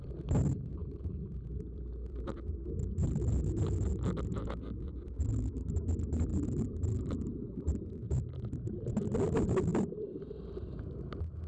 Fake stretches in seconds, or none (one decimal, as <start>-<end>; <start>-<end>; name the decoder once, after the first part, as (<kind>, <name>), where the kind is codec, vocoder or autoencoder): 0.5-5.3 (vocoder, BigVGAN v2); 6.3-8.3; 9.7-10.7